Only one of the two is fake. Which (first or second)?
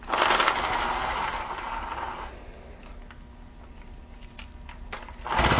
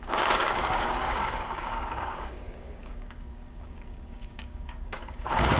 second